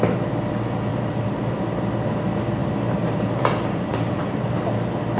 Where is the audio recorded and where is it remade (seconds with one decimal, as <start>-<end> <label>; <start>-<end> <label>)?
0.0-0.9 recorded; 0.9-1.6 remade; 1.6-2.6 recorded; 2.6-4.5 remade; 4.5-5.2 recorded